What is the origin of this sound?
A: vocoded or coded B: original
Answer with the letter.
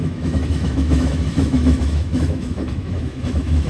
A